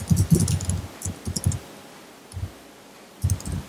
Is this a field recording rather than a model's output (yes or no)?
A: yes